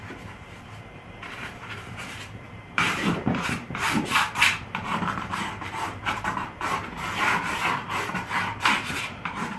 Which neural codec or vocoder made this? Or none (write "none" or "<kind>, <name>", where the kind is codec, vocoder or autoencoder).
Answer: vocoder, BigVGAN v2